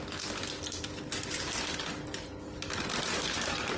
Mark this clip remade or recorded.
recorded